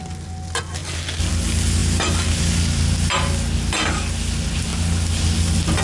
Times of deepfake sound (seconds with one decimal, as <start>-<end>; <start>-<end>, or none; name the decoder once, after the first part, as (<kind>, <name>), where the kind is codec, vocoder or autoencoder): none